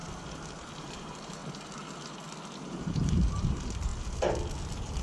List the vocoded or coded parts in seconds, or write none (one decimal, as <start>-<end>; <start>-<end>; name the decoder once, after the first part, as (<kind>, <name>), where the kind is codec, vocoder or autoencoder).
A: 0.8-1.4 (vocoder, BigVGAN v2); 2.6-3.9